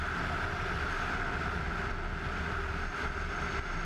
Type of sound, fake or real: real